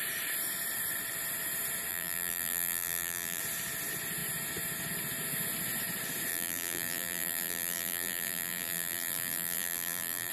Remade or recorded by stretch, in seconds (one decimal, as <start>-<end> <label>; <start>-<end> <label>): 0.0-1.9 recorded; 1.9-3.4 remade; 3.4-6.3 recorded; 6.3-10.3 remade